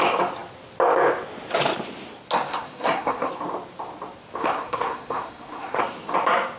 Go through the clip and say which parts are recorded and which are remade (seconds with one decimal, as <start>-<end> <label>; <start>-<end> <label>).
0.0-2.5 recorded; 2.5-3.3 remade; 3.3-4.4 recorded; 4.4-5.8 remade; 5.8-6.6 recorded